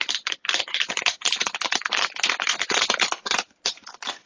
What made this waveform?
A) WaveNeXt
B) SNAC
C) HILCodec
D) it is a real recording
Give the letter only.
D